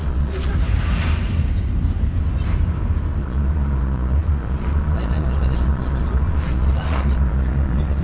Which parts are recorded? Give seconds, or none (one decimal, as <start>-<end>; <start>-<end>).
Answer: 0.5-3.2